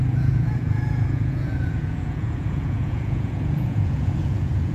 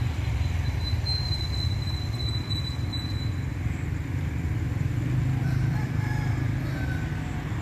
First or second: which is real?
second